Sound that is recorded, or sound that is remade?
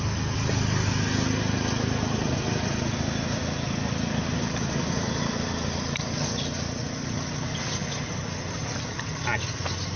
recorded